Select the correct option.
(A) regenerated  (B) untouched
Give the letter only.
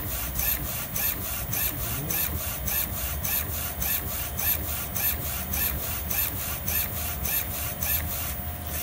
B